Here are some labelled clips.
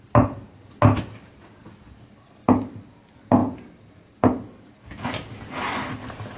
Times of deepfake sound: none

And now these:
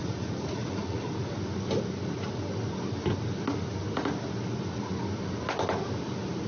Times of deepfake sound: 0.0-1.1 (vocoder, Vocos)